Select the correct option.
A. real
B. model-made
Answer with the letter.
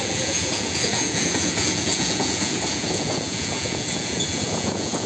B